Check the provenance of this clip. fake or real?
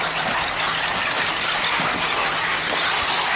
real